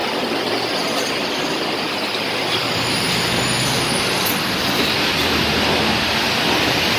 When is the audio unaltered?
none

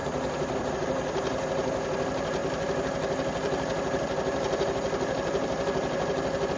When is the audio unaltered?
0.7-2.4

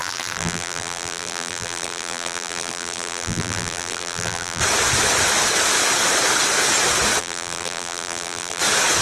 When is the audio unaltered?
4.6-7.2; 8.6-9.0

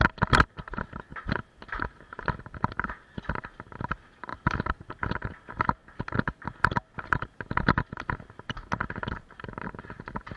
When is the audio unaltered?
0.0-1.1; 3.1-4.3; 4.9-10.4